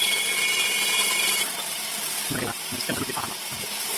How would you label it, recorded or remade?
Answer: recorded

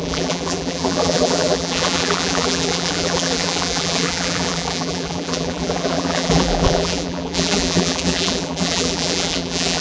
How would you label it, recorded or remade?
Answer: remade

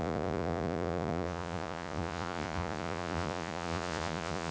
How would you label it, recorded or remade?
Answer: remade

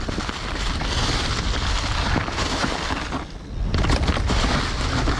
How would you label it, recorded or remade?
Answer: recorded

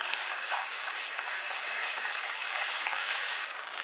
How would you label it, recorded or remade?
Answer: remade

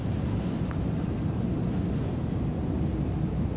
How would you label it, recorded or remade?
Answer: recorded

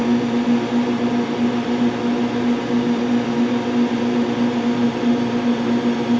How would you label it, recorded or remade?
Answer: recorded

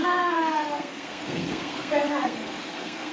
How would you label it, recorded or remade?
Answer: remade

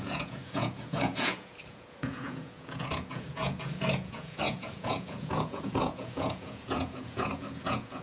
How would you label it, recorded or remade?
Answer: remade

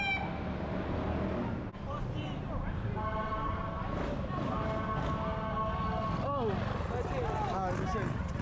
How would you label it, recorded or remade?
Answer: recorded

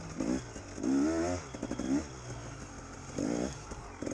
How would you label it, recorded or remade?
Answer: recorded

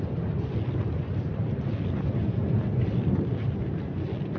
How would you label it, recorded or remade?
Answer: recorded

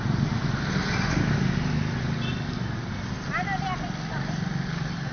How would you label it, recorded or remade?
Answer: recorded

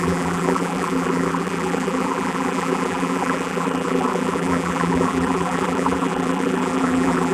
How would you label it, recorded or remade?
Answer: remade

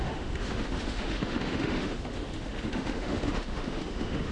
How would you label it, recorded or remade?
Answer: remade